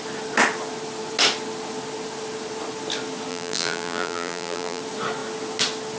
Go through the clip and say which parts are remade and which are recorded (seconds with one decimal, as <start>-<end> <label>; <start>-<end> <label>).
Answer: 0.0-3.3 recorded; 3.3-4.8 remade; 4.8-6.0 recorded